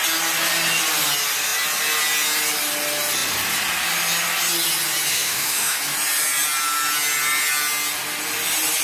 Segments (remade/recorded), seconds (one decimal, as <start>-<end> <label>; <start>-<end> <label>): 0.0-5.1 recorded; 5.1-5.8 remade; 5.8-8.8 recorded